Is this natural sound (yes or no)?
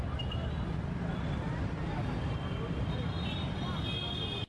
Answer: yes